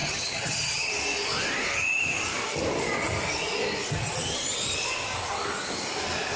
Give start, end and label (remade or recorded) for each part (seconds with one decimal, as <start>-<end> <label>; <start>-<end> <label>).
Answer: 0.0-0.9 remade; 0.9-6.4 recorded